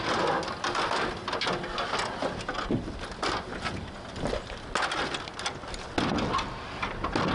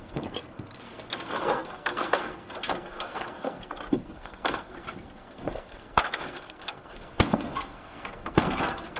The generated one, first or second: second